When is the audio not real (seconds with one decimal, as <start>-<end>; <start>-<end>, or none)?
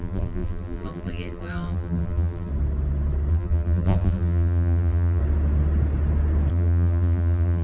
0.0-2.5; 3.3-5.2; 6.5-7.6